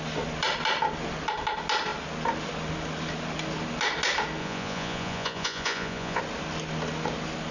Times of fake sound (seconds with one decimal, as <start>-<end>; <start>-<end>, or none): 4.4-6.2